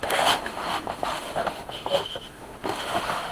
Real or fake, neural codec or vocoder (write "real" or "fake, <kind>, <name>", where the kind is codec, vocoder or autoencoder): fake, autoencoder, DAC-VAE